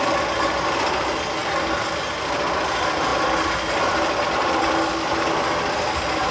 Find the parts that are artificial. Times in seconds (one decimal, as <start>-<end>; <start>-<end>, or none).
none